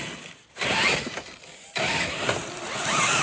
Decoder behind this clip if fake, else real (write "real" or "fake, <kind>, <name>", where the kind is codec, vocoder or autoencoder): real